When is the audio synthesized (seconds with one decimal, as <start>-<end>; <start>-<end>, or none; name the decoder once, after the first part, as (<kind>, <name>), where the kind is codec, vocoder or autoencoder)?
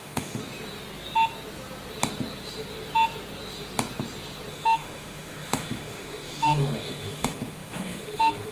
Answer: 0.0-0.4 (autoencoder, DAC-VAE); 4.5-8.5